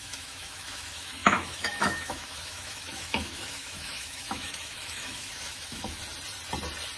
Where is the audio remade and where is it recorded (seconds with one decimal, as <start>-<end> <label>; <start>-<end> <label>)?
0.0-6.0 remade; 6.0-7.0 recorded